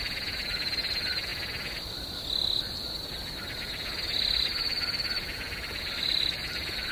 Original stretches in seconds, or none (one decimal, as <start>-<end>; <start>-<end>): 1.3-3.0